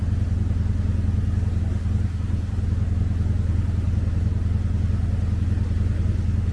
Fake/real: real